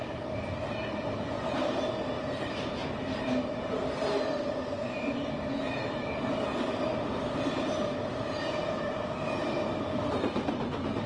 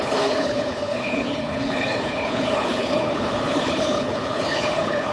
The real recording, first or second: first